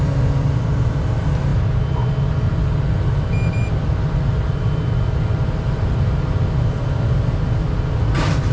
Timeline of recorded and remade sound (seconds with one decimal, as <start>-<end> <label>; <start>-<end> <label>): 0.0-8.5 recorded